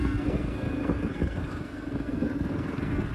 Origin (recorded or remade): remade